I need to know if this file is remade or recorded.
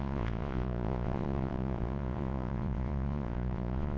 remade